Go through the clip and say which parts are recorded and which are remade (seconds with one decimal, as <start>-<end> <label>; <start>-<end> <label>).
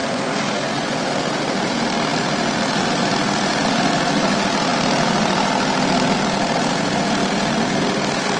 0.0-1.1 remade; 1.1-8.4 recorded